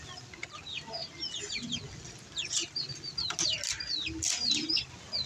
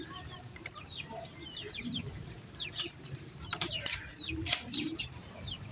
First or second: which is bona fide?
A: first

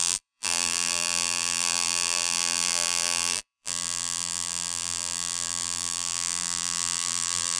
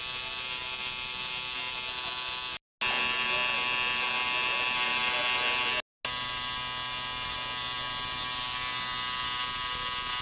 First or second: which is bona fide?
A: second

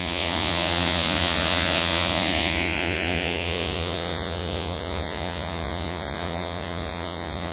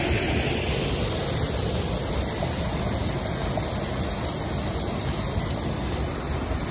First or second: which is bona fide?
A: second